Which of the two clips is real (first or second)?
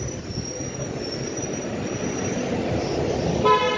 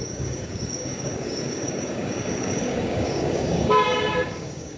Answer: first